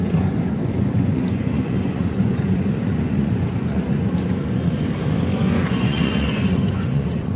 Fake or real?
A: fake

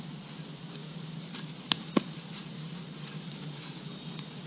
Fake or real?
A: real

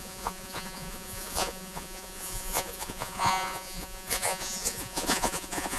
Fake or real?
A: fake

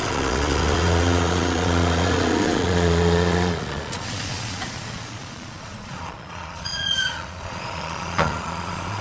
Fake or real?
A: fake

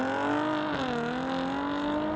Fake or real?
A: real